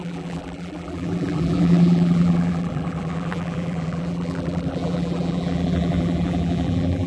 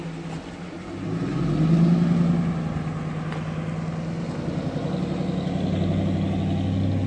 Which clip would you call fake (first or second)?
first